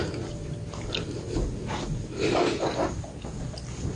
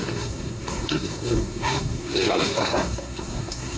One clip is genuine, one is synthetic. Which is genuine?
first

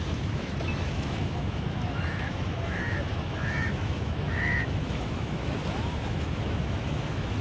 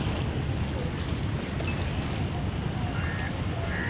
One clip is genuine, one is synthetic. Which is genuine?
second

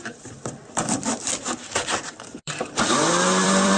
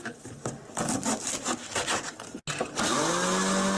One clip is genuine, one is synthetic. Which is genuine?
second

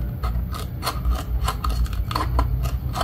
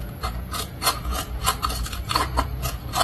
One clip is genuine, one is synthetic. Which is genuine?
first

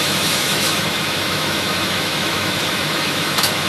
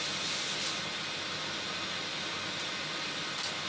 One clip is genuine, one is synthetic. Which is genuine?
second